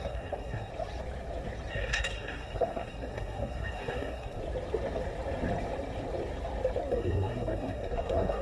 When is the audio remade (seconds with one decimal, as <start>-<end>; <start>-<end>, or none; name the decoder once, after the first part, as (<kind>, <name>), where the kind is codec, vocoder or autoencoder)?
0.0-0.7 (codec, SNAC); 1.7-4.4; 6.9-8.4

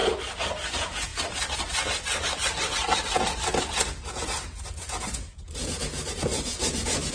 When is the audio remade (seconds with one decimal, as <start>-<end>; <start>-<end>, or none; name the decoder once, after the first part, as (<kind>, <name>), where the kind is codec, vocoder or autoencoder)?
0.7-1.1 (vocoder, Vocos); 4.1-7.1

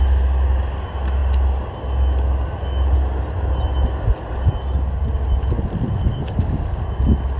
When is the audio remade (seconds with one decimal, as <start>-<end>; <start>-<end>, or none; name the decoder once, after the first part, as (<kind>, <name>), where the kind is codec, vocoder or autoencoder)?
6.1-6.8 (codec, DAC)

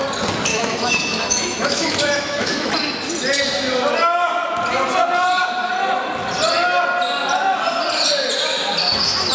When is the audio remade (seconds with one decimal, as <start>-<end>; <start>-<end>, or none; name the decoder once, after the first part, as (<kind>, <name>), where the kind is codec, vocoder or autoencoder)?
0.5-2.7 (autoencoder, DAC-VAE)

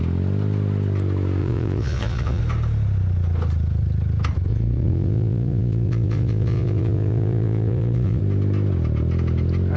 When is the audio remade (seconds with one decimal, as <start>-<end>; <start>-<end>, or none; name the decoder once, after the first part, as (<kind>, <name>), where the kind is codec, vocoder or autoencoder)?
1.4-2.4 (vocoder, Vocos); 4.5-8.2

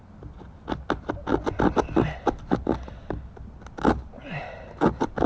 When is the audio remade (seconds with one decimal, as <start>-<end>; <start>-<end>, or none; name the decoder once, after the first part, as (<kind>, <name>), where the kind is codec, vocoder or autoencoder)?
none

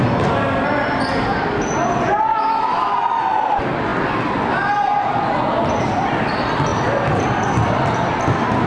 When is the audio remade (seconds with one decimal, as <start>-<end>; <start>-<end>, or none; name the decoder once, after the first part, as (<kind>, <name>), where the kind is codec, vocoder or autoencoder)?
2.3-2.9 (autoencoder, DAC-VAE)